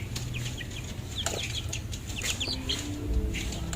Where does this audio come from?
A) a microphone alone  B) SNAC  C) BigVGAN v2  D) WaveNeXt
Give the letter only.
A